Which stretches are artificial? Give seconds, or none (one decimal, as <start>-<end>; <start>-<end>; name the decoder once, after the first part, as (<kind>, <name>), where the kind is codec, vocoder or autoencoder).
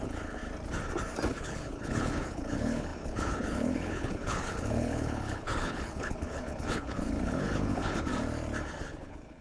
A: 0.0-0.4 (codec, HILCodec); 1.3-8.1; 8.8-9.4